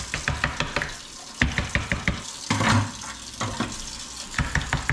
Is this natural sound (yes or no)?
yes